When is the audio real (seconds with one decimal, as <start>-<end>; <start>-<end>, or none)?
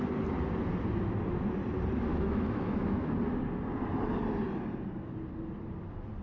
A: 0.0-2.1; 3.1-6.2